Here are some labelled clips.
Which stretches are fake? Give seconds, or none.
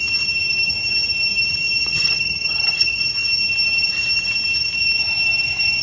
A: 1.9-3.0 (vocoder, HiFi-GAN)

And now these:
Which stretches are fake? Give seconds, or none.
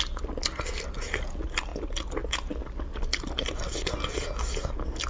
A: none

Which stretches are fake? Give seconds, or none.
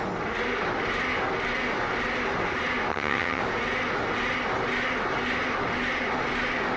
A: 2.9-3.4 (vocoder, HiFi-GAN)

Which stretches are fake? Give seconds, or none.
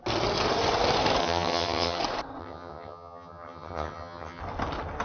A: 1.2-2.0 (vocoder, HiFi-GAN); 2.4-4.4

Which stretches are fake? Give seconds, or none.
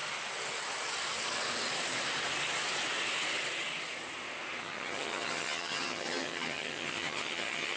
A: 4.6-7.8 (vocoder, HiFi-GAN)